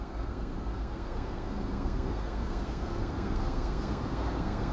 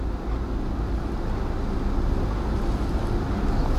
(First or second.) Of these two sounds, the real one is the second